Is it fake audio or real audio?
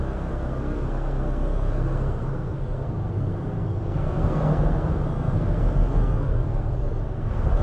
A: fake